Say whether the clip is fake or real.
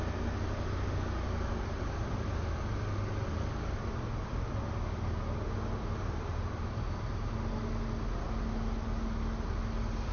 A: real